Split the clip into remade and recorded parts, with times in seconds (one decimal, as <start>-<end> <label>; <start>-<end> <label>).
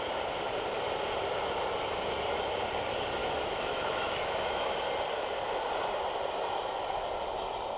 0.0-3.2 recorded; 3.2-4.8 remade; 4.8-7.8 recorded